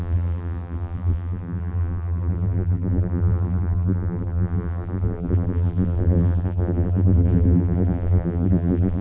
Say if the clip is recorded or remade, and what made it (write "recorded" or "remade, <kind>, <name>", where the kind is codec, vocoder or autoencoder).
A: remade, vocoder, BigVGAN v2